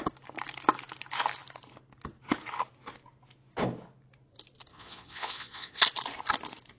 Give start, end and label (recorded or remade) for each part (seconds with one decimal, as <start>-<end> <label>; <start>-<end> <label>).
0.0-4.7 recorded; 4.7-5.8 remade; 5.8-6.8 recorded